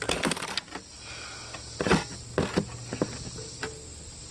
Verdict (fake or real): real